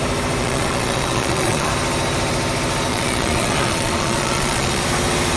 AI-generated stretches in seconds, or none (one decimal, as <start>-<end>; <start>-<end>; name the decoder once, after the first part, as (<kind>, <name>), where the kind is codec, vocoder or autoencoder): 0.4-1.7 (vocoder, Vocos); 2.9-4.8